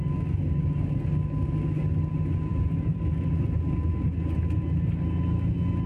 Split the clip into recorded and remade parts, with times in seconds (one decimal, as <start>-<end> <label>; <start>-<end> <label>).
0.0-5.9 recorded